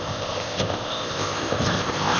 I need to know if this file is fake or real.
fake